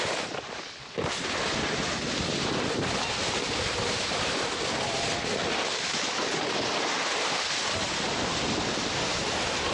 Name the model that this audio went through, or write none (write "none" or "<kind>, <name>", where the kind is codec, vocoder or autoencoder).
none